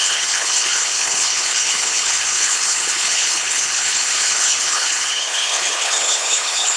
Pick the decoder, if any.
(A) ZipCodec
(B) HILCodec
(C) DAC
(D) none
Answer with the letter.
B